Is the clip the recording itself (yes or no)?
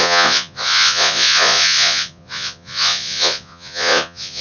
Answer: no